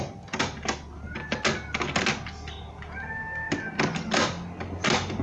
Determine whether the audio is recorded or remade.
recorded